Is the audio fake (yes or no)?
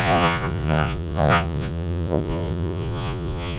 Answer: yes